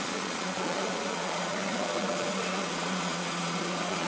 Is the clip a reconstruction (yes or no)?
yes